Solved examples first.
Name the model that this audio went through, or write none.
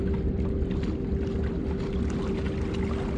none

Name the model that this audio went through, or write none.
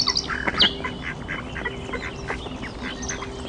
none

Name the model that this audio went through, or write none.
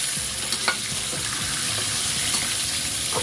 none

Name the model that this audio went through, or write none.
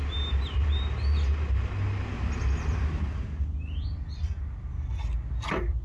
none